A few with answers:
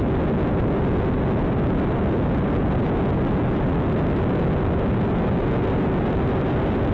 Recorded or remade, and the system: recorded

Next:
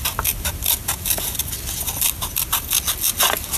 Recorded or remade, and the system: recorded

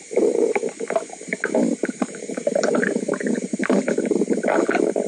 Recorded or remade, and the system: recorded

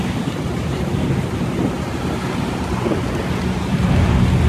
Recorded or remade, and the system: recorded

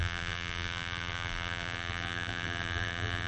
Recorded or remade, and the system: remade, vocoder, BigVGAN v2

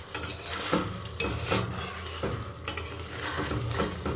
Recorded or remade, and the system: recorded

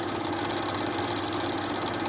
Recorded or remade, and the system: recorded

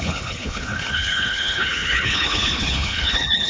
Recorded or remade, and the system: remade, codec, HILCodec